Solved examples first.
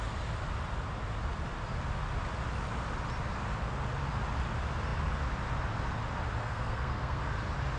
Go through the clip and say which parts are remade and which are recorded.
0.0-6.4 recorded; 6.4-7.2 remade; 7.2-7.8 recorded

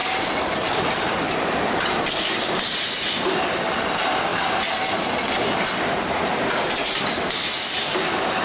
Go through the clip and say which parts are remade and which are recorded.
0.0-8.4 recorded

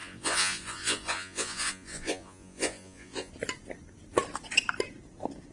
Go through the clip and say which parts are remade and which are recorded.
0.0-3.3 remade; 3.3-5.5 recorded

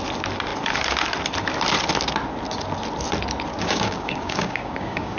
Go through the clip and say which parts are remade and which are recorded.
0.0-3.5 recorded; 3.5-5.2 remade

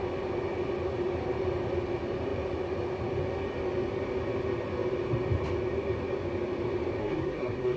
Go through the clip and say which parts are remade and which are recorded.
0.0-7.0 recorded; 7.0-7.8 remade

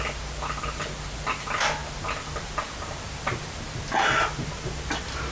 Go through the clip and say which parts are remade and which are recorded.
0.0-5.3 recorded

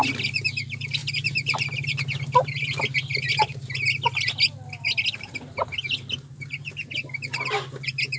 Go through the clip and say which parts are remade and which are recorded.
0.0-8.2 recorded